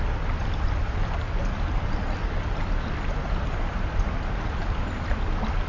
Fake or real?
real